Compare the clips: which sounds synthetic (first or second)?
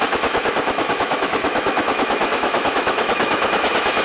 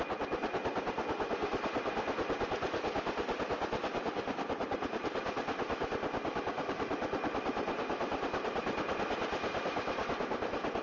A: first